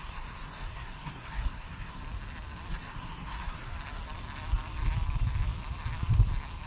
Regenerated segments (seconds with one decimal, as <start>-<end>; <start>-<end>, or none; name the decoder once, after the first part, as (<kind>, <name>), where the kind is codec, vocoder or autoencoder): 0.0-2.0 (codec, SNAC); 2.7-3.7